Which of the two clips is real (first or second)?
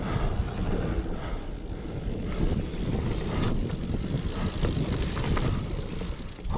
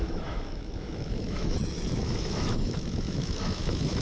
first